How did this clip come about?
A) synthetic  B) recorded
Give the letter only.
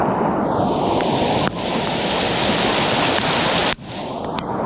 B